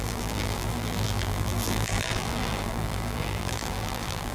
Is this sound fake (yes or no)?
yes